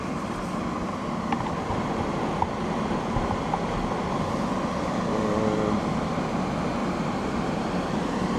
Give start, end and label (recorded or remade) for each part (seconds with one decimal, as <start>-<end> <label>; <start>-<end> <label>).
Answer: 0.0-6.8 recorded; 6.8-8.4 remade